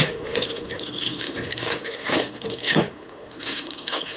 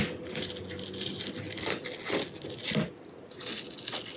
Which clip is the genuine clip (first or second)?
second